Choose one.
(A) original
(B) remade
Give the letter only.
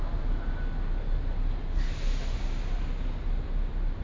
A